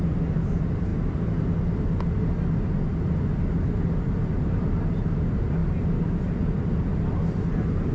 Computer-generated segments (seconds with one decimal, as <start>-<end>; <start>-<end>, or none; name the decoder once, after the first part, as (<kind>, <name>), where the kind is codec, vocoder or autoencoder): none